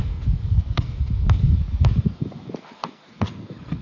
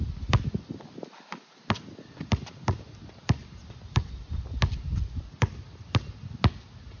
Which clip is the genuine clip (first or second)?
second